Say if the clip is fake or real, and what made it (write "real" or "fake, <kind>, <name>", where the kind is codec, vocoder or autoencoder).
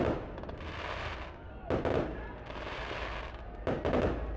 real